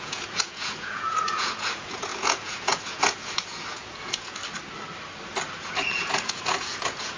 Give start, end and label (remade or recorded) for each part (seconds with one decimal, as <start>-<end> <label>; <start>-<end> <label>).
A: 0.0-4.4 remade; 4.4-5.6 recorded; 5.6-7.2 remade

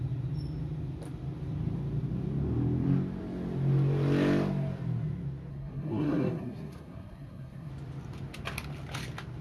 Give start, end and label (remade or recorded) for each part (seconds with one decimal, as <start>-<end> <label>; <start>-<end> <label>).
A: 0.0-5.5 recorded; 5.5-7.7 remade; 7.7-9.4 recorded

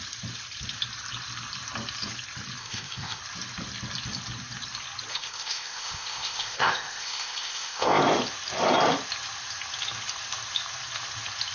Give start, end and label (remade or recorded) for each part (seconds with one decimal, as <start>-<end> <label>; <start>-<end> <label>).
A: 0.0-2.6 recorded; 2.6-3.2 remade; 3.2-5.1 recorded; 5.1-8.0 remade; 8.0-11.5 recorded

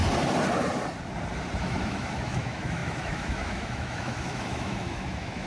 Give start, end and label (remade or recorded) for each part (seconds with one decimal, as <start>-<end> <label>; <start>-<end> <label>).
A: 0.0-1.6 recorded; 1.6-5.5 remade

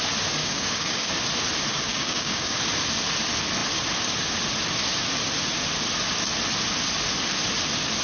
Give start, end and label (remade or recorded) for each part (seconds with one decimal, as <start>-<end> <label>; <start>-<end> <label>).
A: 0.0-0.4 recorded; 0.4-1.1 remade; 1.1-1.7 recorded; 1.7-2.6 remade; 2.6-8.0 recorded